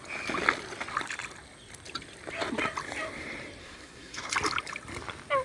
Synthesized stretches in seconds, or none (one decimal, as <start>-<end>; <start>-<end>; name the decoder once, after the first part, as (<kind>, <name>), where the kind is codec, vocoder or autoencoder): 3.6-4.3 (codec, SNAC)